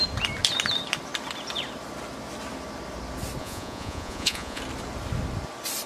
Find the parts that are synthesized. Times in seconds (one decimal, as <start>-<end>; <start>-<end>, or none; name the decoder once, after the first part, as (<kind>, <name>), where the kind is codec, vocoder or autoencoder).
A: 3.4-4.6 (vocoder, Vocos)